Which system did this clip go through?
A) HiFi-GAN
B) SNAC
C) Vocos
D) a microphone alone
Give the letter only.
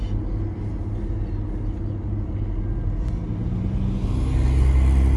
D